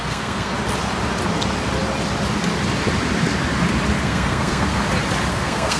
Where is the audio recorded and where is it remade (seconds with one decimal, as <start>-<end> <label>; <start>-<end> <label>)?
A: 0.0-0.5 remade; 0.5-4.0 recorded; 4.0-4.8 remade; 4.8-5.3 recorded; 5.3-5.8 remade